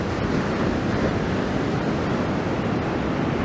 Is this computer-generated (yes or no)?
no